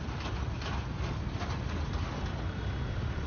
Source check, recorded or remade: recorded